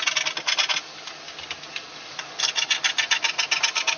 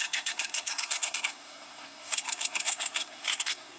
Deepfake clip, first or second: second